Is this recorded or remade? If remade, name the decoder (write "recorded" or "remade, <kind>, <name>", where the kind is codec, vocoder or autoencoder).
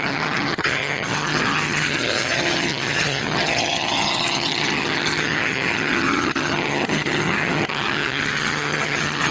remade, vocoder, HiFi-GAN